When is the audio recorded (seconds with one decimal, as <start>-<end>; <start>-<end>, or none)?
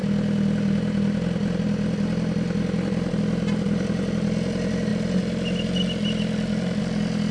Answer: 0.0-7.3